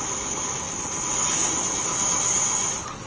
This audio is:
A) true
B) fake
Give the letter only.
A